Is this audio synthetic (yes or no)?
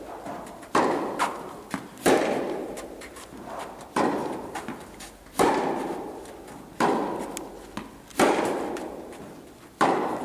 no